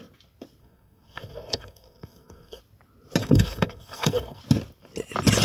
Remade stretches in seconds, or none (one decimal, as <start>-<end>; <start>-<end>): 0.6-2.6; 3.2-4.4